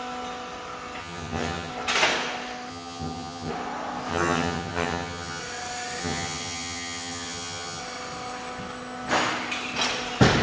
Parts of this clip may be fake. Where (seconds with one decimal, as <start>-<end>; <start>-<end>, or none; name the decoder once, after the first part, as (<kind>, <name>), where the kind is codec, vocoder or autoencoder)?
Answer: 1.0-1.7 (vocoder, HiFi-GAN); 2.7-3.5; 4.1-5.4; 6.0-7.8